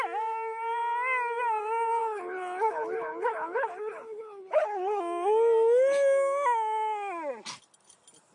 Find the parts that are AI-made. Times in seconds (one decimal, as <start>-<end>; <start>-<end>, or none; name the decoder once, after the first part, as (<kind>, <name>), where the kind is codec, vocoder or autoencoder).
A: 2.0-5.0 (codec, HILCodec)